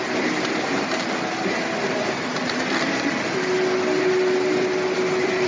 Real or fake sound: real